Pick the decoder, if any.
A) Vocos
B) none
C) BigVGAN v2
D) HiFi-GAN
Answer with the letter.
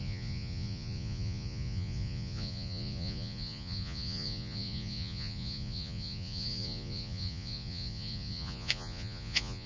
A